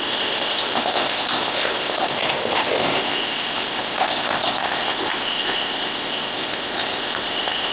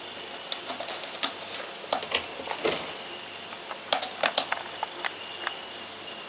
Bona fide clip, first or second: second